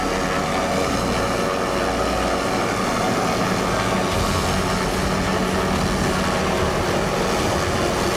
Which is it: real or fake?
real